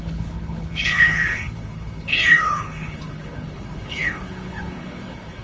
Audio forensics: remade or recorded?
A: remade